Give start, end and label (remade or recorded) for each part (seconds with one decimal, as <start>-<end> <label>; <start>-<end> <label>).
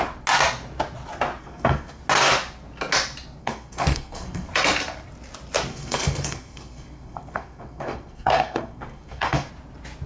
0.0-1.4 recorded; 1.4-2.0 remade; 2.0-3.4 recorded; 3.4-4.5 remade; 4.5-5.7 recorded; 5.7-9.5 remade; 9.5-10.1 recorded